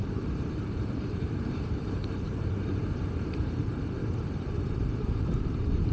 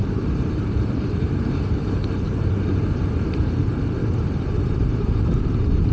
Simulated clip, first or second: first